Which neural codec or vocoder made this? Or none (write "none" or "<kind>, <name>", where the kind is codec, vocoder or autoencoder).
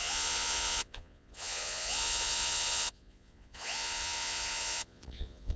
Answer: vocoder, Vocos